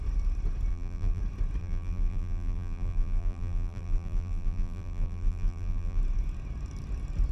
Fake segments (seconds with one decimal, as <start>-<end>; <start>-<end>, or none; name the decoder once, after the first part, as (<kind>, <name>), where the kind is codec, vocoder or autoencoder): 0.7-1.2 (vocoder, BigVGAN v2); 1.6-6.0